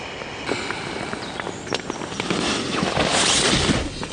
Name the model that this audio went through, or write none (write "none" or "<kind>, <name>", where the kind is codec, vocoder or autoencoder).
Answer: none